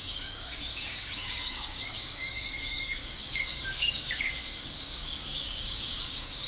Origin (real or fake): fake